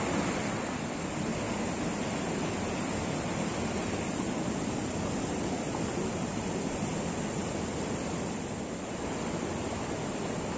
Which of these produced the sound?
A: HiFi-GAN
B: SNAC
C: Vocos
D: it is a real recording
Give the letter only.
D